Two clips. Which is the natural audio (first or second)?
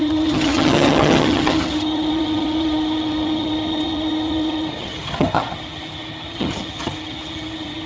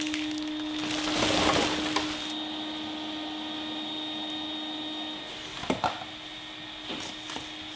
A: second